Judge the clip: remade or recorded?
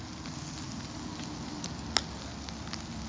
recorded